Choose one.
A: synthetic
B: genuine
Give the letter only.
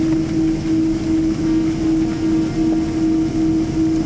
B